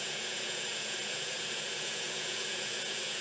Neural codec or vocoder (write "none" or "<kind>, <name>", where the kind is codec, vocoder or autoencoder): vocoder, Vocos